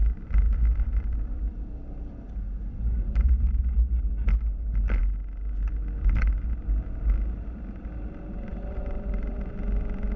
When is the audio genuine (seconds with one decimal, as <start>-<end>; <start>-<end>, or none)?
3.6-8.5; 9.5-10.2